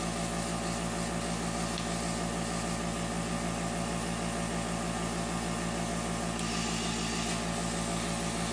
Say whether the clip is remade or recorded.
recorded